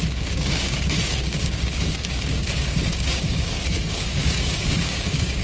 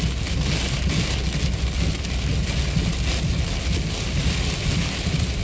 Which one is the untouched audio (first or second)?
second